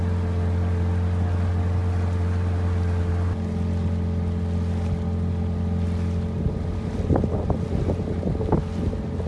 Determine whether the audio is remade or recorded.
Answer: recorded